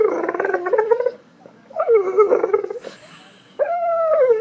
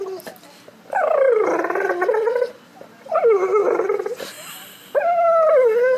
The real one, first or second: second